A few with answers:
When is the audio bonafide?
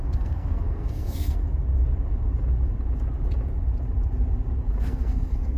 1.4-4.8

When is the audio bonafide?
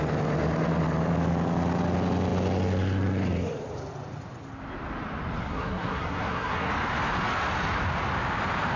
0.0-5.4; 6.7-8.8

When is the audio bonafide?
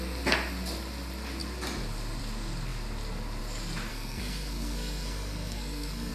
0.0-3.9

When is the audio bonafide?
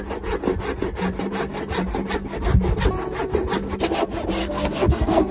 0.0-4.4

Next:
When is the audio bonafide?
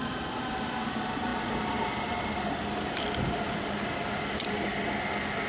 0.0-5.5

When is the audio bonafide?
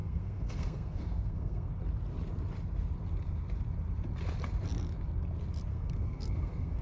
1.7-5.7